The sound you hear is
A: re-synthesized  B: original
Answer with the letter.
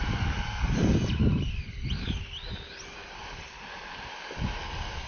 A